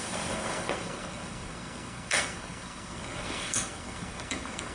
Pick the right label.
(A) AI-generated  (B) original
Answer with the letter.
A